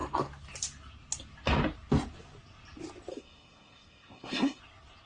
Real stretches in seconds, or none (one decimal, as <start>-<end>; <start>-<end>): 0.0-3.1; 4.6-5.1

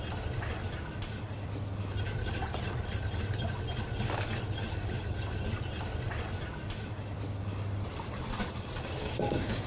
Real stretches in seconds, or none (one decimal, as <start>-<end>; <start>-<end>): 0.0-9.0

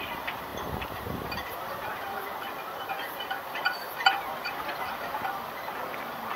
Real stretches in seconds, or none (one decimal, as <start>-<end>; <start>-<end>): 0.0-0.5; 1.9-3.8; 5.2-6.4

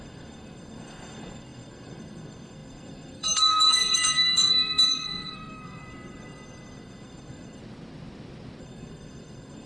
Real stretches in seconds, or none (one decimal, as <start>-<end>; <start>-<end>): 7.6-8.6

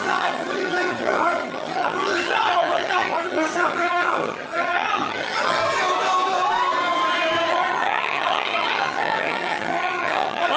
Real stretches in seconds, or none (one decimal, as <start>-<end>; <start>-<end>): 5.6-7.5

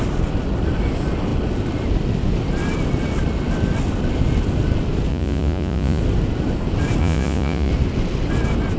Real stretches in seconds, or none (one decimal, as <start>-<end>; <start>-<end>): 0.0-5.1; 6.0-7.0; 7.7-8.8